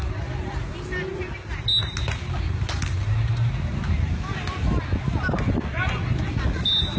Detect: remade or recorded recorded